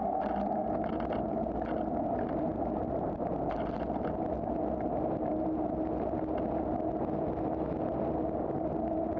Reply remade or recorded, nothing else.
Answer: recorded